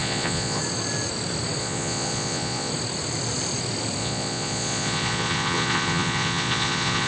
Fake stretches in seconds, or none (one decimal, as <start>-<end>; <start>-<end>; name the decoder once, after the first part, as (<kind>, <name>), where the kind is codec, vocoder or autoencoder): 0.0-0.6 (vocoder, Vocos); 1.6-2.7; 4.0-7.1